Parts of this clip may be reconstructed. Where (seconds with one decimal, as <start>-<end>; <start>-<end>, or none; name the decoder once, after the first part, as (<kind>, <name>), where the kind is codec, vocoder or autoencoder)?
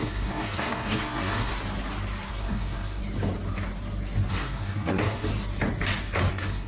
0.0-1.5 (codec, SNAC); 2.3-3.0; 4.3-5.3; 6.3-6.7